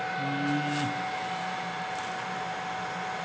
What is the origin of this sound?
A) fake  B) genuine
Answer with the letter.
B